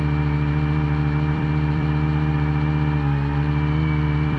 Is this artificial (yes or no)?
yes